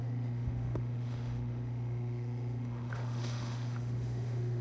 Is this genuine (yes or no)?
no